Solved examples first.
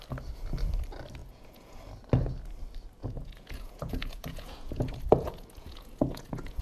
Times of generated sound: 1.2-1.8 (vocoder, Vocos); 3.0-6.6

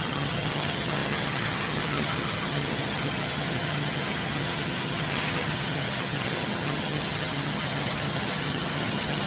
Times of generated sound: 0.0-9.3 (vocoder, HiFi-GAN)

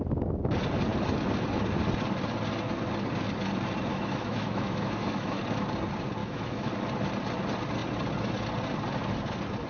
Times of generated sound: 3.9-5.4 (autoencoder, DAC-VAE); 6.2-6.7